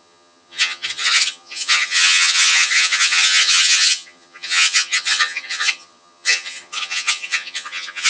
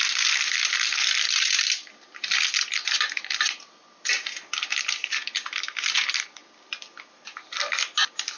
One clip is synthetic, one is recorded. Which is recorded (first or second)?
second